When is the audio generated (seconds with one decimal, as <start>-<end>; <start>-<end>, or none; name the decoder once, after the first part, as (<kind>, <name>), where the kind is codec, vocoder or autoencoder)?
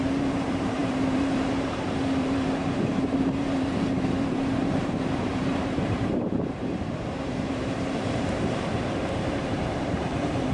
0.0-10.5 (vocoder, BigVGAN v2)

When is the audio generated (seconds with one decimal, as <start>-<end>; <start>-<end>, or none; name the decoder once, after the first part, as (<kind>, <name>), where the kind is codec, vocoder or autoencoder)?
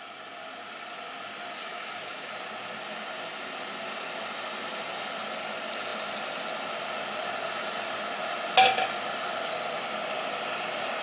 1.6-2.3 (codec, DAC)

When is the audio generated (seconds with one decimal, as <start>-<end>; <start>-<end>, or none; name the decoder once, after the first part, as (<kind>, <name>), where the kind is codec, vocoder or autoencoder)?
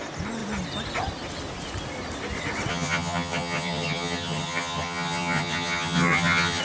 2.7-6.6 (vocoder, HiFi-GAN)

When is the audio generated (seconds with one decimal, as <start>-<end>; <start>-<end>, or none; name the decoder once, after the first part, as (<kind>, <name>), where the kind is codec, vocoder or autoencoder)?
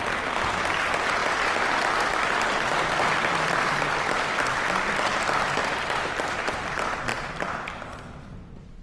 7.1-7.7 (vocoder, BigVGAN v2)